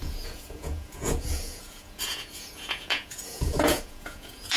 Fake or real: fake